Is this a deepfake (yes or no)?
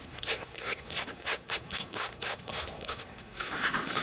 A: yes